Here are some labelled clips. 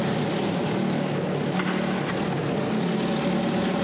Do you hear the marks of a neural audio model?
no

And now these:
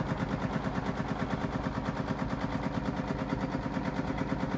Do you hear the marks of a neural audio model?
no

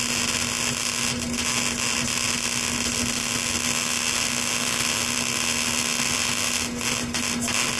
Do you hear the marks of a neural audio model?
no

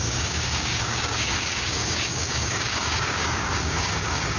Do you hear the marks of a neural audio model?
yes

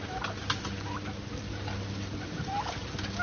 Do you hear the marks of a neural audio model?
no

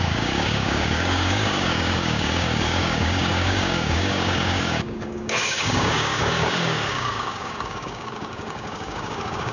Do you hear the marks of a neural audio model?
yes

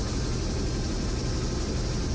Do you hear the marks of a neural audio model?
no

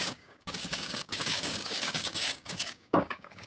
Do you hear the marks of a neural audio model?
yes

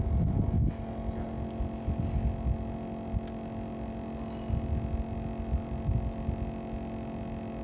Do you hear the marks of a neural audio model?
no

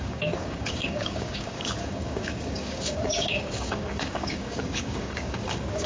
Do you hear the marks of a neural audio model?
yes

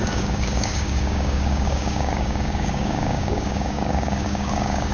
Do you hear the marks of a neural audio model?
yes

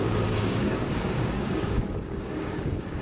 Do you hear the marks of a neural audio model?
yes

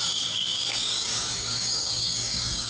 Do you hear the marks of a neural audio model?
yes